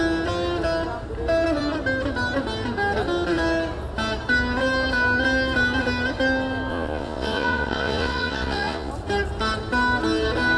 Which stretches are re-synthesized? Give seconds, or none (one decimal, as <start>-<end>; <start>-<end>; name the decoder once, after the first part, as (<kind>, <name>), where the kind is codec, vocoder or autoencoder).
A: 6.7-8.9 (vocoder, Vocos)